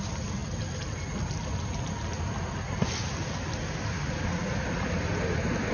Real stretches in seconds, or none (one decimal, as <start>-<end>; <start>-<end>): 0.0-5.7